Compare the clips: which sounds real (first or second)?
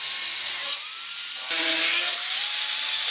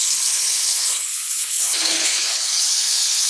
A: first